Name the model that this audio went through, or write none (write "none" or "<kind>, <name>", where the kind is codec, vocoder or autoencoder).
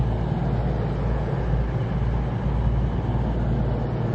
none